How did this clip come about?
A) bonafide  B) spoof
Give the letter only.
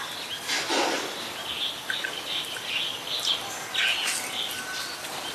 A